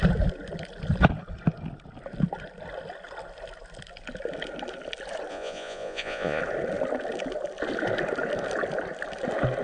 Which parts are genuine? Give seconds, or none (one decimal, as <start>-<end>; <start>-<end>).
0.0-5.3; 6.4-9.6